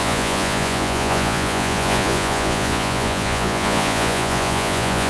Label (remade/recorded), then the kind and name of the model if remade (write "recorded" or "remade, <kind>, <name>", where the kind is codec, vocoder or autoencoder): remade, vocoder, Vocos